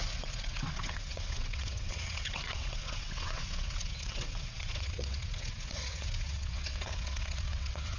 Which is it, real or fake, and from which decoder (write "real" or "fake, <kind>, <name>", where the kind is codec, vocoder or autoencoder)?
fake, vocoder, WaveNeXt